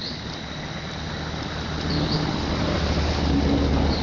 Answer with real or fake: real